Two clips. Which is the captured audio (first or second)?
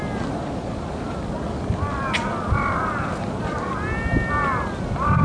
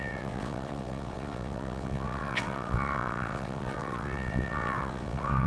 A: first